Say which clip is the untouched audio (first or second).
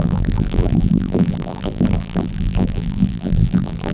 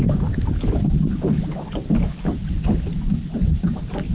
second